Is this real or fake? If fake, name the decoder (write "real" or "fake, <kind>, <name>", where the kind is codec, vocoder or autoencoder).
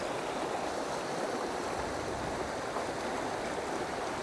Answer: fake, vocoder, BigVGAN v2